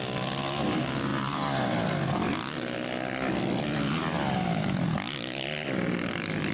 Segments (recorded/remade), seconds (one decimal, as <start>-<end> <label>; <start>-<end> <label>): 0.0-6.5 recorded